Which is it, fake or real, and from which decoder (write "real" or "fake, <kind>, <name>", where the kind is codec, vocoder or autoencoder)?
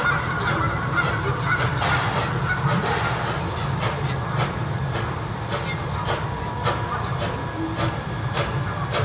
real